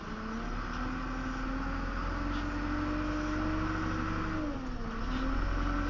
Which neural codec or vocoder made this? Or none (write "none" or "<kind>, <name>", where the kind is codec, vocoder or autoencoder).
none